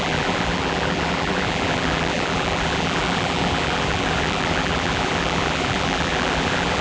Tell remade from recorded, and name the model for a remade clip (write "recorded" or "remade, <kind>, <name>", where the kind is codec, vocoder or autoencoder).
remade, vocoder, BigVGAN v2